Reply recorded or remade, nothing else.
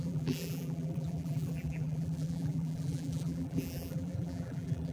remade